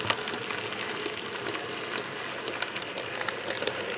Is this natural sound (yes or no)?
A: yes